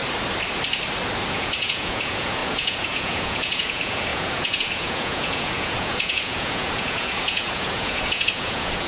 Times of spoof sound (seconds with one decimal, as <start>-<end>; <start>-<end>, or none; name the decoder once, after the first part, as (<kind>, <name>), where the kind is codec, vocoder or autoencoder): 1.3-8.9 (vocoder, Vocos)